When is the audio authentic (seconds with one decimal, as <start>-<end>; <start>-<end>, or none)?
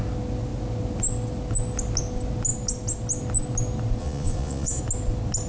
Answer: 0.0-4.0; 4.8-5.5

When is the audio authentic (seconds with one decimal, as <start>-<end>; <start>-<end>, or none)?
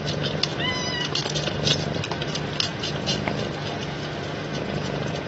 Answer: 0.0-2.7; 3.4-3.8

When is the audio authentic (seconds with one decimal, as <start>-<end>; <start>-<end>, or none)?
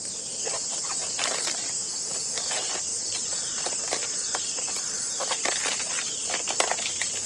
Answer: 0.0-1.8; 2.3-7.3